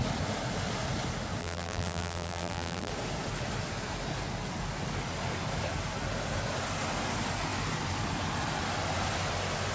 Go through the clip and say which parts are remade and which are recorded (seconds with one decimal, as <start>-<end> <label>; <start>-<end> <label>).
0.0-1.4 recorded; 1.4-2.9 remade; 2.9-9.7 recorded